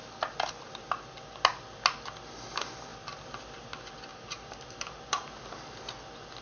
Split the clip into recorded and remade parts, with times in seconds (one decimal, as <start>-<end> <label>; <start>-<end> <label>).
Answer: 0.0-4.1 recorded; 4.1-5.4 remade; 5.4-6.4 recorded